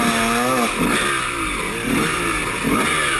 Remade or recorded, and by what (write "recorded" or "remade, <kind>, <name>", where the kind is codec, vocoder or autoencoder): recorded